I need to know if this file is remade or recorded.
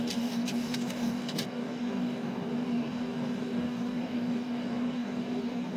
remade